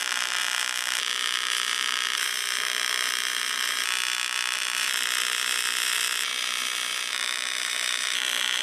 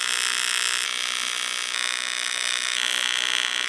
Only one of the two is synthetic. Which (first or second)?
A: first